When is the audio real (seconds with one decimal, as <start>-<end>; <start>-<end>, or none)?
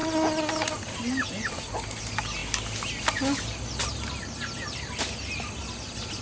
0.0-6.2